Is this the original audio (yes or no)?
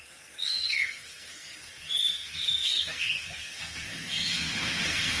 no